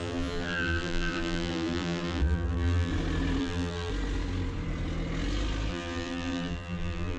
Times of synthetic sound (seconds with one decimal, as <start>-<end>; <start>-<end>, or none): 0.0-2.9; 3.4-3.9; 5.7-7.2